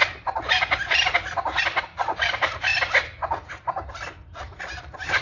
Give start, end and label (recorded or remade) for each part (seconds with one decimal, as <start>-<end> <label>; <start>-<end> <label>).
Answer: 0.0-1.8 recorded; 1.8-2.7 remade; 2.7-4.8 recorded; 4.8-5.2 remade